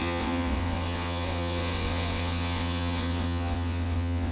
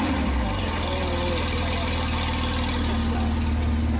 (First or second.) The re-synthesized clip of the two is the first